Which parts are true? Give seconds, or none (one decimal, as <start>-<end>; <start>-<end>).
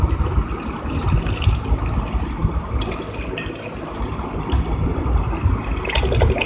0.0-6.5